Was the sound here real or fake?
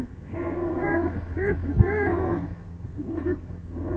fake